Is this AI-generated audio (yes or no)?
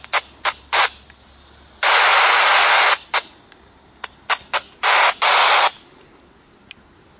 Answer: no